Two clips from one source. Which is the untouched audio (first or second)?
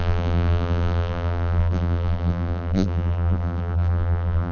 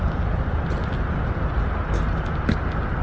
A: second